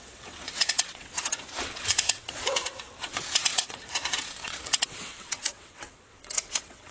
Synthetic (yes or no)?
yes